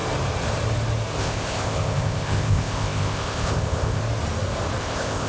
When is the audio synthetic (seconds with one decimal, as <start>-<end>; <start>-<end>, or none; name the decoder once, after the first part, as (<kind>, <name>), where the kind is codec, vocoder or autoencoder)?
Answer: 1.2-4.0 (codec, ZipCodec); 4.8-5.3